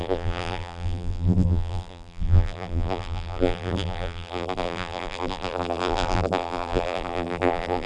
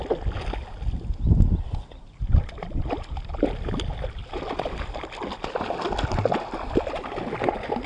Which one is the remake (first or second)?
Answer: first